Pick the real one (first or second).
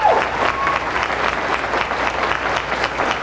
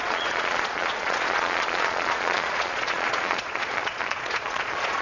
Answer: first